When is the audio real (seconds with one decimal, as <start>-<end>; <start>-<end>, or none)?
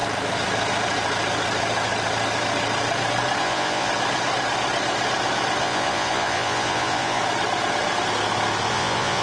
0.0-3.4; 3.9-5.6; 7.2-8.7